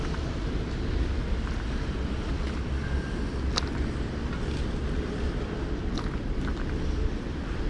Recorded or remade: recorded